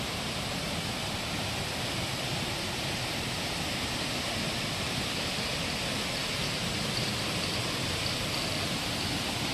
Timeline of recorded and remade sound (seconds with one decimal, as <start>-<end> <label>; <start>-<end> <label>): 0.0-6.2 remade; 6.2-8.4 recorded; 8.4-9.5 remade